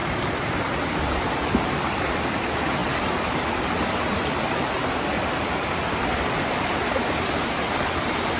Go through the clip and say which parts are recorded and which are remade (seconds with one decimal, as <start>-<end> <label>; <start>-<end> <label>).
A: 0.0-8.4 remade